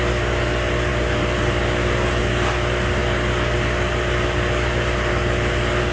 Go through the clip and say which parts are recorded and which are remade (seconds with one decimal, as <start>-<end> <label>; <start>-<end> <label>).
0.0-5.9 recorded